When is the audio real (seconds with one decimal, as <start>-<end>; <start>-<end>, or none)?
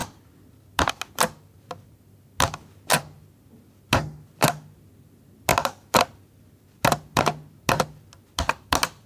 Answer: 0.0-9.1